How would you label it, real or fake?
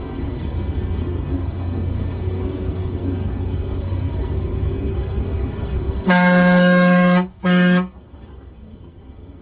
fake